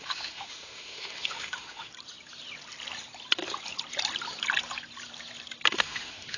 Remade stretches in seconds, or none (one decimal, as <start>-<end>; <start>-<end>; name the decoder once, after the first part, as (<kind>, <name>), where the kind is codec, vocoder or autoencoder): 0.0-1.9 (autoencoder, DAC-VAE); 5.7-6.4